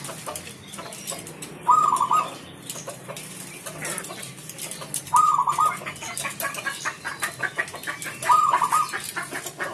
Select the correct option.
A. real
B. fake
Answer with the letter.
A